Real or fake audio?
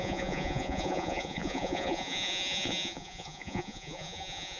fake